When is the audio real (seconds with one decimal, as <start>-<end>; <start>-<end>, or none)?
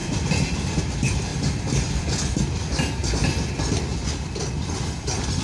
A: 0.8-1.3; 2.3-5.4